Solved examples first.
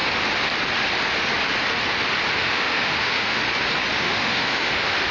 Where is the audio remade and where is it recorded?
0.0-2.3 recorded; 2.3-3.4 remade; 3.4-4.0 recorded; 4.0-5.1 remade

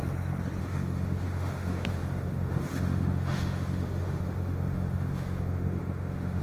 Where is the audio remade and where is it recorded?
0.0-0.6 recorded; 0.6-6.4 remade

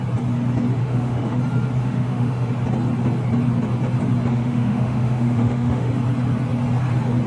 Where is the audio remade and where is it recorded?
0.0-0.8 recorded; 0.8-1.4 remade; 1.4-1.8 recorded; 1.8-2.5 remade; 2.5-4.3 recorded; 4.3-5.9 remade; 5.9-7.3 recorded

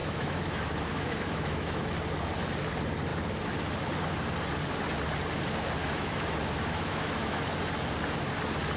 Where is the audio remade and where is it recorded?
0.0-1.9 remade; 1.9-5.8 recorded; 5.8-7.4 remade; 7.4-8.8 recorded